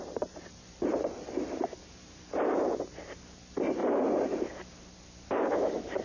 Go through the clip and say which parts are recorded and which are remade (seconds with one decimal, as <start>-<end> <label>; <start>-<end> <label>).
0.0-0.9 remade; 0.9-1.6 recorded; 1.6-3.8 remade; 3.8-4.5 recorded; 4.5-6.0 remade